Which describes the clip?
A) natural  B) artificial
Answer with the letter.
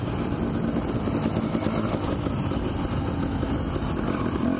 A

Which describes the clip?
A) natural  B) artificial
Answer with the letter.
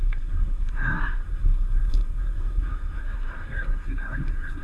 B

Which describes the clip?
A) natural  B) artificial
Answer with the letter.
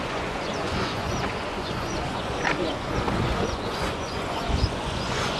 B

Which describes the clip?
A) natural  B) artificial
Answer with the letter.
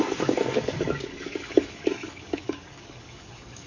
B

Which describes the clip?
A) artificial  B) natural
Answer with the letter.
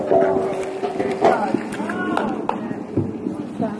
B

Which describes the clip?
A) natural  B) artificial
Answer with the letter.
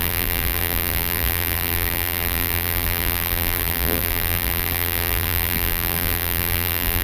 B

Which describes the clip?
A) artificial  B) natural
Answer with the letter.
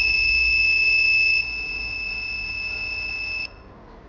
B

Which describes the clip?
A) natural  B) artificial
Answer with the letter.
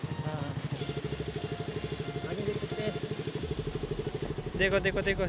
A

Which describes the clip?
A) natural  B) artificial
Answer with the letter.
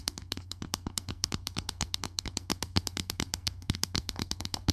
B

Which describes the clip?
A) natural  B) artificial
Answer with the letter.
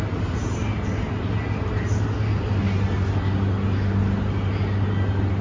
A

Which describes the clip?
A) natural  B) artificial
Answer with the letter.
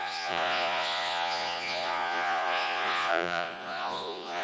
B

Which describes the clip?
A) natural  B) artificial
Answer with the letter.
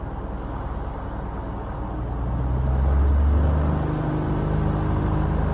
A